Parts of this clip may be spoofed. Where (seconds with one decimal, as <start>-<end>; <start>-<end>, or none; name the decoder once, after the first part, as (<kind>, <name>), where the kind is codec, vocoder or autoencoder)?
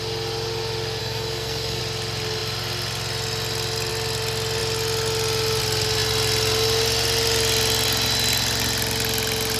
1.0-1.8 (codec, SNAC)